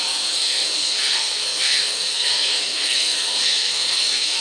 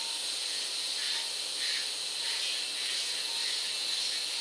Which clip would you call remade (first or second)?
first